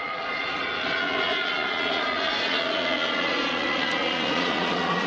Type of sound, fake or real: fake